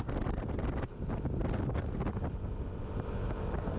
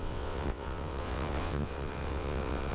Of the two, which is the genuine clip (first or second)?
first